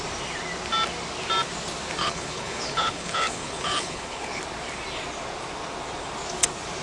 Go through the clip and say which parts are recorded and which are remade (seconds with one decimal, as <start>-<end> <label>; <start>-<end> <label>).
0.0-2.0 recorded; 2.0-4.4 remade; 4.4-6.8 recorded